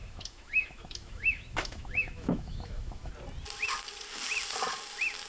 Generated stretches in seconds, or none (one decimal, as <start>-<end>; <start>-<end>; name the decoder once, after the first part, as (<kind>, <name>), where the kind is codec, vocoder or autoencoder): 0.0-3.1 (autoencoder, DAC-VAE)